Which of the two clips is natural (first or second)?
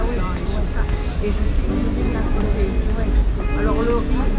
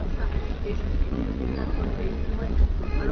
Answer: first